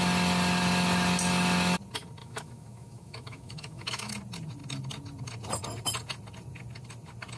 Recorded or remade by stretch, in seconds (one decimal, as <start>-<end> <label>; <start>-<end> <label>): 0.0-2.2 recorded; 2.2-4.1 remade; 4.1-7.4 recorded